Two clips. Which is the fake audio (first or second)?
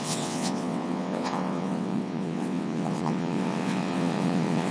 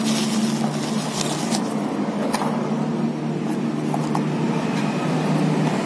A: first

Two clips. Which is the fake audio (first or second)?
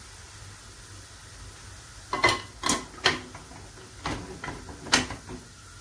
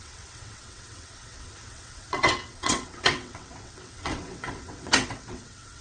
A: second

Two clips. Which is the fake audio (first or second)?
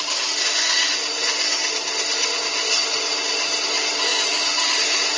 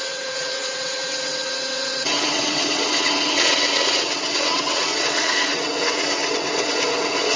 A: second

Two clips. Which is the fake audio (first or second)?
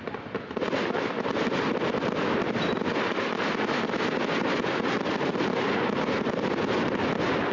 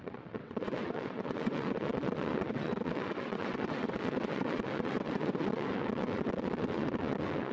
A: second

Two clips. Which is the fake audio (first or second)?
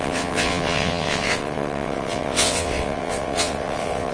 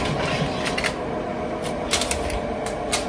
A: first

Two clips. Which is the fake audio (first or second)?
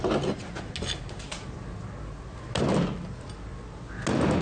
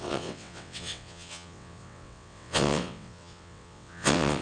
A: second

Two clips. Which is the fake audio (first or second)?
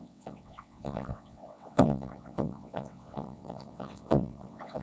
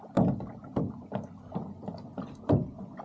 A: first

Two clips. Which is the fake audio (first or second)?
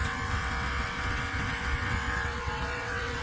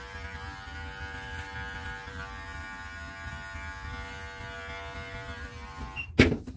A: first